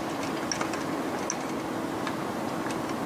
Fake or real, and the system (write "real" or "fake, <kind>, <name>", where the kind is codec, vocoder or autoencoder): real